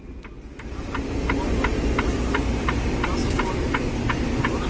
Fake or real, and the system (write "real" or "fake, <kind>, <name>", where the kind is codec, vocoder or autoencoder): real